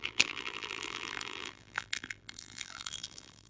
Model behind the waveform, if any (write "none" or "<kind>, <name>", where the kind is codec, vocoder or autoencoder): vocoder, BigVGAN v2